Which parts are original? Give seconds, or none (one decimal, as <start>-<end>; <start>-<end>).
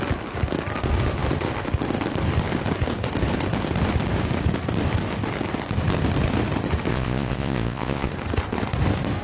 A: 0.0-6.9; 8.1-9.2